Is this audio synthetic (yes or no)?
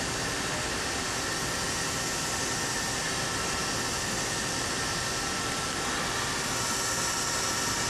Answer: no